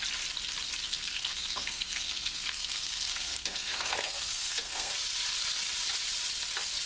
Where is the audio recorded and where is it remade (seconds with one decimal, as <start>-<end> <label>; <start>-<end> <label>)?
0.0-0.8 recorded; 0.8-4.9 remade; 4.9-6.9 recorded